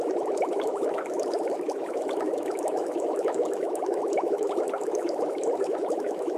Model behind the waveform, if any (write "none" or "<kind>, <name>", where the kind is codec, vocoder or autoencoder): autoencoder, DAC-VAE